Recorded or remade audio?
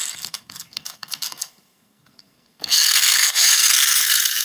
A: remade